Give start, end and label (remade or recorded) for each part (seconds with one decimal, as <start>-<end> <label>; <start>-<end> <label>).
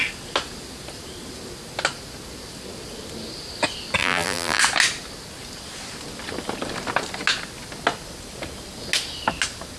0.0-4.0 recorded; 4.0-4.6 remade; 4.6-9.8 recorded